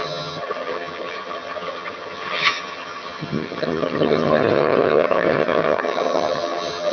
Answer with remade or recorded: remade